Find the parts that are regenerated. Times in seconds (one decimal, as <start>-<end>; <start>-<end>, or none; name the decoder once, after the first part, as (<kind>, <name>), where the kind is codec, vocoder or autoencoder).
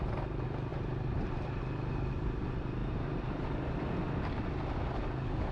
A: 2.8-3.4 (vocoder, BigVGAN v2)